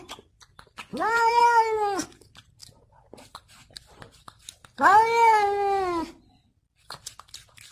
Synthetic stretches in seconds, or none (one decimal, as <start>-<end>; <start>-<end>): 0.9-1.4